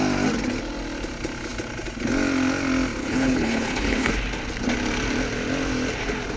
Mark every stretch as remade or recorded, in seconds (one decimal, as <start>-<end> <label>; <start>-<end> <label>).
0.0-3.0 recorded; 3.0-4.1 remade; 4.1-6.4 recorded